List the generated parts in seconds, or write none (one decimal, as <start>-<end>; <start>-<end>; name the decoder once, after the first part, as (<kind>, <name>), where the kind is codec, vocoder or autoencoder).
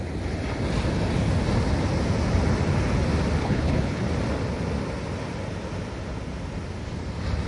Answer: 3.4-4.0 (codec, HILCodec)